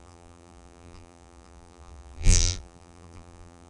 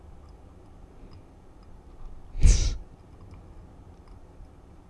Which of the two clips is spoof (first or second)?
first